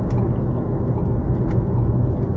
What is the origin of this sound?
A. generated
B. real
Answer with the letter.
B